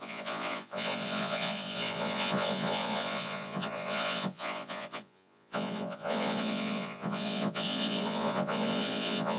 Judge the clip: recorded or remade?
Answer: remade